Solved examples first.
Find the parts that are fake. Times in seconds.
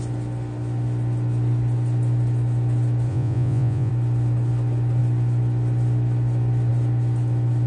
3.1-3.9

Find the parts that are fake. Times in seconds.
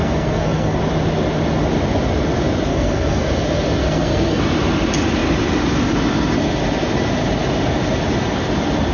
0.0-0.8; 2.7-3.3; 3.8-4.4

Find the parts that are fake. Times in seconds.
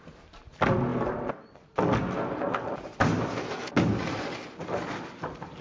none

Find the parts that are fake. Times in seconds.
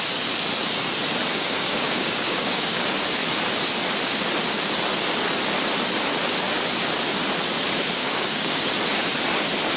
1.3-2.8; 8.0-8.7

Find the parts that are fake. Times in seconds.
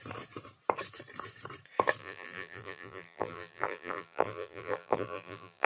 2.0-5.7